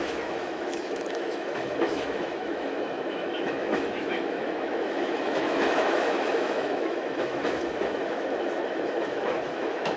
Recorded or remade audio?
remade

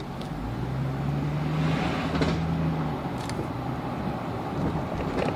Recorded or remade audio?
recorded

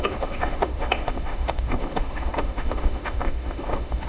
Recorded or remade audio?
remade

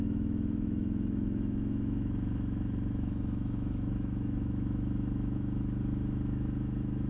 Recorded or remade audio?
remade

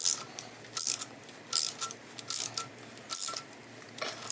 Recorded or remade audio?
recorded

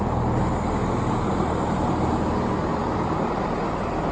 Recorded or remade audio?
recorded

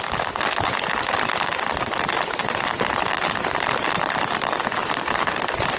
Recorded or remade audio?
recorded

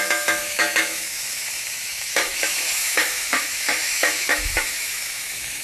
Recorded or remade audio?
remade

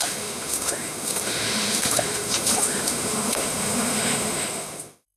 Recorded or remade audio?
remade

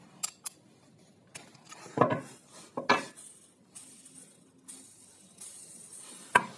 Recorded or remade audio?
recorded